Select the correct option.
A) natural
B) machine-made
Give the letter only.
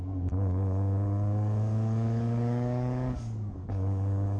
B